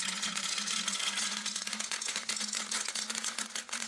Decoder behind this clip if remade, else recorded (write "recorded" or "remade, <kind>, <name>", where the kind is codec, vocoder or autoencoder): remade, vocoder, Vocos